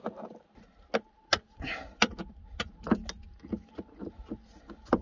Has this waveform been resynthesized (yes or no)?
no